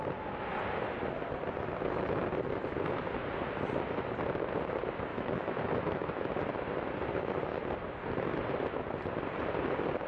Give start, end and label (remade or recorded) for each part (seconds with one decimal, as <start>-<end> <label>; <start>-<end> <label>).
0.0-5.1 recorded; 5.1-6.3 remade; 6.3-10.1 recorded